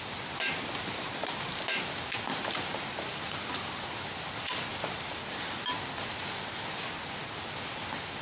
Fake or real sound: real